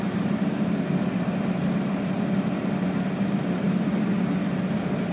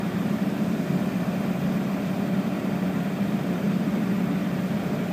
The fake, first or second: second